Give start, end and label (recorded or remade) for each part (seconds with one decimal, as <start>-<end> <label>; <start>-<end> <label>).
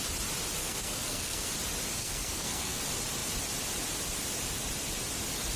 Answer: 0.0-0.6 recorded; 0.6-1.5 remade; 1.5-2.0 recorded; 2.0-2.8 remade; 2.8-5.6 recorded